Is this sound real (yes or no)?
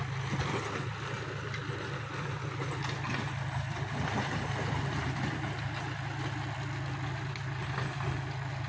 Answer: yes